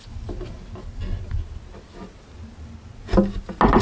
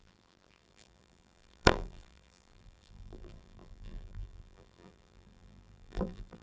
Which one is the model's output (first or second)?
second